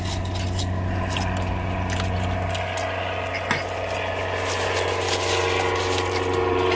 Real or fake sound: real